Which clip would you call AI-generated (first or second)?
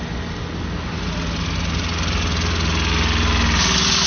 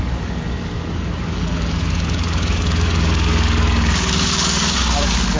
second